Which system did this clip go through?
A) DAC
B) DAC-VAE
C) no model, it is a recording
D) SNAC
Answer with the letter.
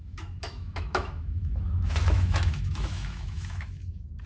B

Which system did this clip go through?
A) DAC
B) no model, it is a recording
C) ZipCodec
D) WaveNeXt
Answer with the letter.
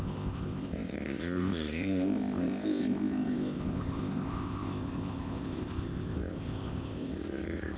C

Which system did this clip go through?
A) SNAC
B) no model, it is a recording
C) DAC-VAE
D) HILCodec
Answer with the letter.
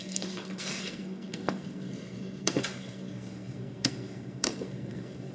A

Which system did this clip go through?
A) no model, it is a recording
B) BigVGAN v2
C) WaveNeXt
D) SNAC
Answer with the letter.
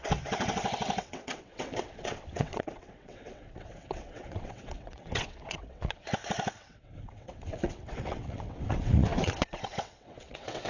C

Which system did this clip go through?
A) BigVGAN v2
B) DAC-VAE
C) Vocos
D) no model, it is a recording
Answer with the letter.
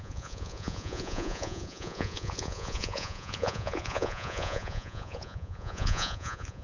C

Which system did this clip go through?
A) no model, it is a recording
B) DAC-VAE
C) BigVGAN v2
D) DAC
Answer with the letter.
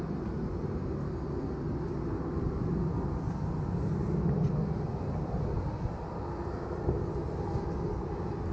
A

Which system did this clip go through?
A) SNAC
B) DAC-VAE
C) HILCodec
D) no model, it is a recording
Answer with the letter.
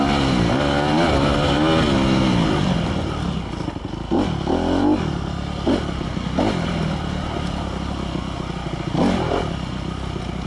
D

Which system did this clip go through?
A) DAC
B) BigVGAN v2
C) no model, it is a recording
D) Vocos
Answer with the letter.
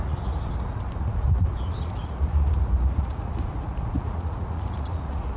D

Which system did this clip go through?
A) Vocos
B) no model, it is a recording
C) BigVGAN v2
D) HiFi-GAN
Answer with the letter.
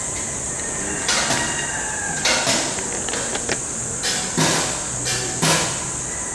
B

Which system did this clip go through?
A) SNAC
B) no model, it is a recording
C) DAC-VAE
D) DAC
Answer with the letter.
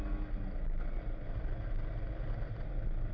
B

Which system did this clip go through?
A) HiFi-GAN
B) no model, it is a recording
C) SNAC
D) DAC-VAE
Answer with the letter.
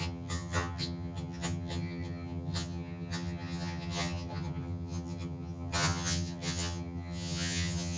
A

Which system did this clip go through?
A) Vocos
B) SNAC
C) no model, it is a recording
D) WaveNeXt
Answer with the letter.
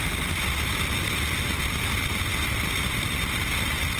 C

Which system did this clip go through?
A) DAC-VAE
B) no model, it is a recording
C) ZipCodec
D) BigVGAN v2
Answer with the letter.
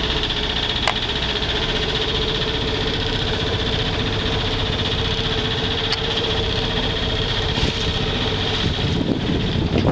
D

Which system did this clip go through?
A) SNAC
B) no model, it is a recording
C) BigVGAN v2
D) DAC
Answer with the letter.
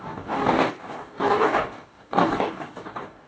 D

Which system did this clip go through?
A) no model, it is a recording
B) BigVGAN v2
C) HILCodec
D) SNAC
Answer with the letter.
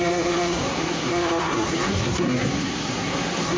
D